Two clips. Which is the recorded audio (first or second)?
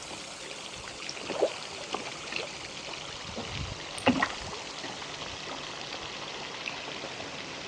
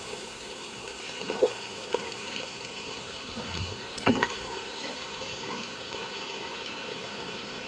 first